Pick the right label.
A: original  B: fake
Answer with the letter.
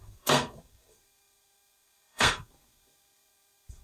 B